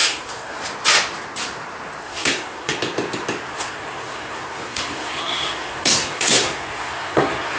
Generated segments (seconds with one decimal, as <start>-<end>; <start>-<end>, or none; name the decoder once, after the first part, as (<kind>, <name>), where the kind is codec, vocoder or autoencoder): 0.0-0.6 (codec, SNAC); 2.0-2.8; 3.5-7.6